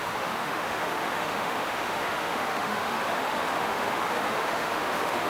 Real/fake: fake